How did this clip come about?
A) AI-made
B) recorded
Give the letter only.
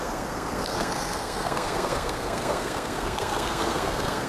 A